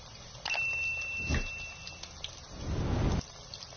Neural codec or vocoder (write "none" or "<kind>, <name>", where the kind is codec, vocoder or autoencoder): none